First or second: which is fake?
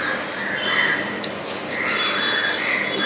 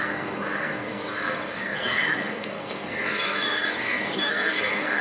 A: second